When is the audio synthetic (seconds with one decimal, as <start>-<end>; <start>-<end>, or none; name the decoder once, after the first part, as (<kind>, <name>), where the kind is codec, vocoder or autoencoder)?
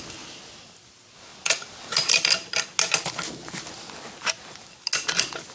none